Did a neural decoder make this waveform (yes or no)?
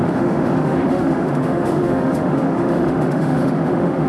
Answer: yes